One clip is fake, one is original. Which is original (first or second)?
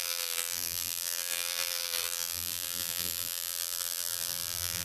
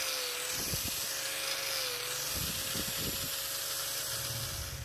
second